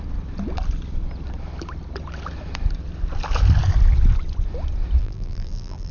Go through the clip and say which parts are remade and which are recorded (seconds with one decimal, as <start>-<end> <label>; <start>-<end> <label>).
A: 0.0-5.0 recorded; 5.0-5.9 remade